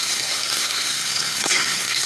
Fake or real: fake